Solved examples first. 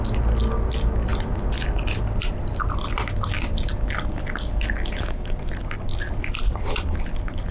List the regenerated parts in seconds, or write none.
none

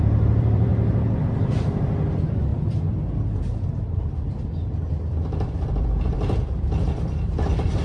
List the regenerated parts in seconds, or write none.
0.0-0.7 (vocoder, BigVGAN v2); 1.2-2.5; 3.4-7.8

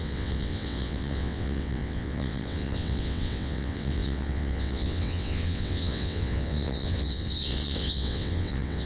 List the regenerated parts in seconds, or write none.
0.0-8.9 (vocoder, WaveNeXt)

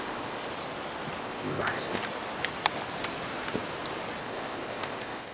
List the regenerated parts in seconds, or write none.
0.0-0.5 (codec, ZipCodec); 1.2-2.0; 4.2-5.3